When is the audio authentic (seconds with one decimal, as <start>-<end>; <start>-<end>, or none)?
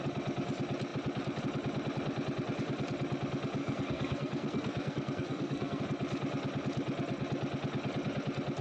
0.0-3.6; 5.8-8.6